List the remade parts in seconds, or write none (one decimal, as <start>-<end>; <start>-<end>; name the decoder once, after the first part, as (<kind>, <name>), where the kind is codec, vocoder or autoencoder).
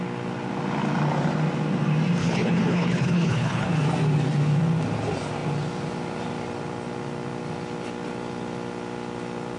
2.2-3.7 (codec, HILCodec)